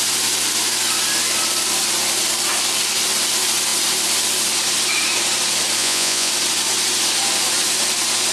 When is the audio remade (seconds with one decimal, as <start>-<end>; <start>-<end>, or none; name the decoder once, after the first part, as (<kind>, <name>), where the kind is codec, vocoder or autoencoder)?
5.8-6.3 (vocoder, Vocos)